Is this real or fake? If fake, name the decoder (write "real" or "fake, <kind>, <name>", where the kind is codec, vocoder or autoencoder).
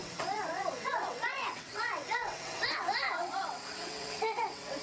fake, vocoder, WaveNeXt